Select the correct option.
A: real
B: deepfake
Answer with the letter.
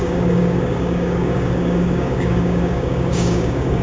B